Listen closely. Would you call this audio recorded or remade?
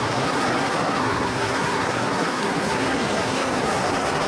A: remade